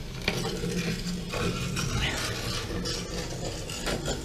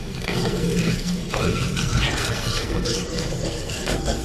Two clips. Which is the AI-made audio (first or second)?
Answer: second